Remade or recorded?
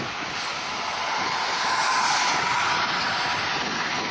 recorded